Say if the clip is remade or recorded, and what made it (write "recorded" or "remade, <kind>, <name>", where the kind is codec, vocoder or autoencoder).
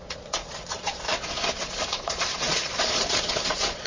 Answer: remade, vocoder, Vocos